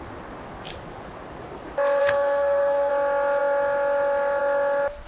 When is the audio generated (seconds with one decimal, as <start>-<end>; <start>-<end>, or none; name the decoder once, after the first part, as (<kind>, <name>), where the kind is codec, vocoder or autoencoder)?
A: 2.0-2.9 (codec, SNAC)